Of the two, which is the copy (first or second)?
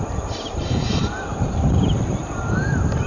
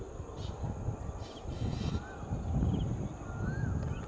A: first